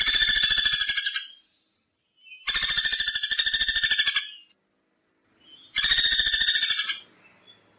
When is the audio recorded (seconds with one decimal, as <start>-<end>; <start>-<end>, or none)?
0.0-7.8